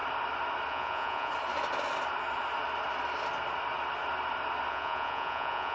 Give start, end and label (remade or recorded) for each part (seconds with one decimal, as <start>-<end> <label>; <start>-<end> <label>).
0.0-0.7 recorded; 0.7-1.3 remade; 1.3-4.7 recorded; 4.7-5.7 remade